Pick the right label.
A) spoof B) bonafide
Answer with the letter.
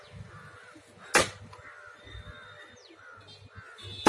B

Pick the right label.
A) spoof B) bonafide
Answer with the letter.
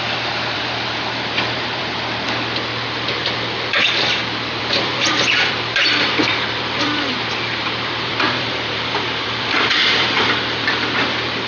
A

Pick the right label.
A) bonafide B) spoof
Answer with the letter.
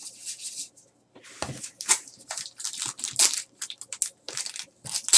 A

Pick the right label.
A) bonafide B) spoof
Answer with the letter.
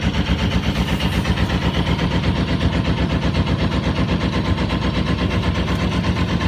A